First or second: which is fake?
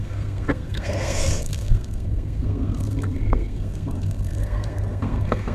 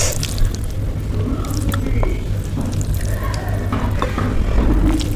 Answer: first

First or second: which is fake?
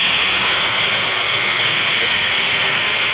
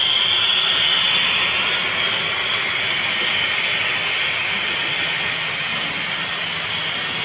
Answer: first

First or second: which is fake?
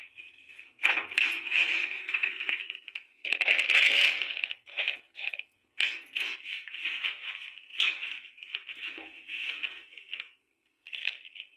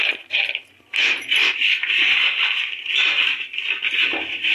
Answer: first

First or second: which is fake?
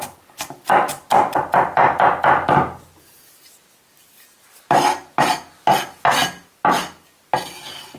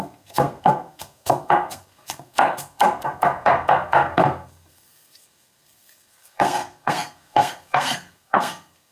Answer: second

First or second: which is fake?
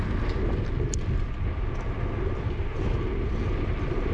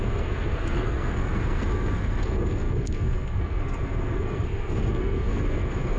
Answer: second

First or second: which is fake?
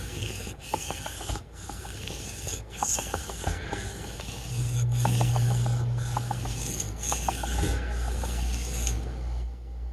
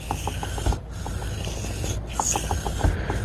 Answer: first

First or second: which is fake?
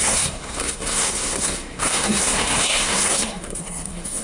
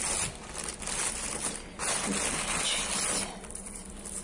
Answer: first